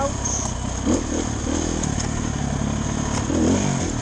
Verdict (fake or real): real